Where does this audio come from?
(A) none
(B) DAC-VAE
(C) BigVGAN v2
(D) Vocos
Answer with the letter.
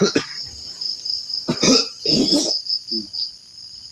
A